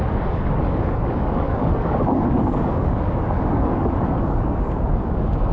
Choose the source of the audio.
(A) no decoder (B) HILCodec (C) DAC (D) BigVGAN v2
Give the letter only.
C